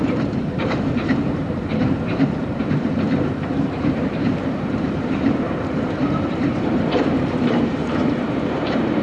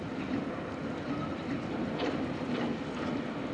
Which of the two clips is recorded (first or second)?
second